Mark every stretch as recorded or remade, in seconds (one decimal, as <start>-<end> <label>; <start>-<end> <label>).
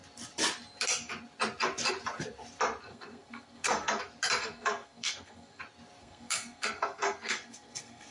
0.0-2.9 recorded; 2.9-4.0 remade; 4.0-4.4 recorded; 4.4-5.6 remade; 5.6-6.0 recorded; 6.0-8.1 remade